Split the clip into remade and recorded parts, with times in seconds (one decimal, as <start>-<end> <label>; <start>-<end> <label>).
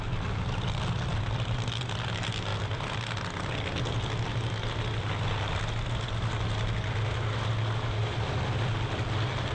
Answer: 0.0-9.5 recorded